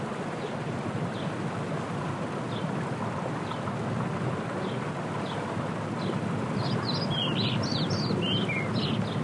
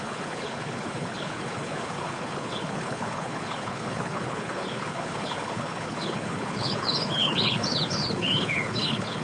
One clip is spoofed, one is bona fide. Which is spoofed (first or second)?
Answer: second